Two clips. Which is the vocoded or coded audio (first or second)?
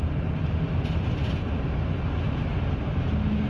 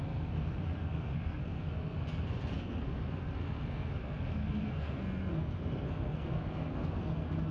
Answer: second